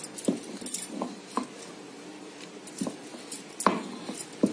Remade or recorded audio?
recorded